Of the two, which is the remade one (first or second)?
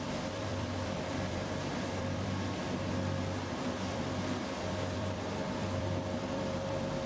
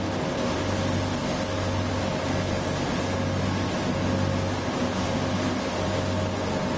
first